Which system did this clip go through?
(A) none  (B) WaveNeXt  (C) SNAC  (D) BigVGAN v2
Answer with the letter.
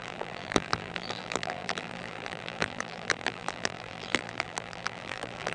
D